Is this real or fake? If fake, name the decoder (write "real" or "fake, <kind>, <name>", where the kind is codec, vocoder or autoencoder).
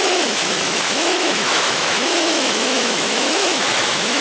fake, autoencoder, DAC-VAE